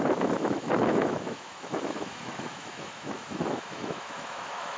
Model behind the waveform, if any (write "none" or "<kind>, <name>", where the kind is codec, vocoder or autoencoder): autoencoder, DAC-VAE